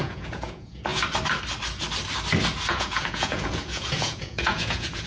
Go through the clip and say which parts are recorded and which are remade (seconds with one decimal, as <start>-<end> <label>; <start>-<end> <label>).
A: 0.0-0.9 remade; 0.9-2.7 recorded; 2.7-5.1 remade